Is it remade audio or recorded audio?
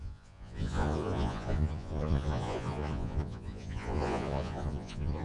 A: remade